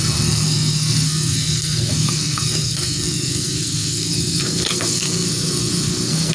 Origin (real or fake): fake